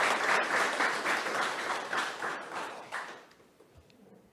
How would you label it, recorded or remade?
remade